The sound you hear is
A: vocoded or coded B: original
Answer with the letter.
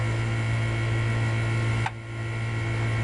B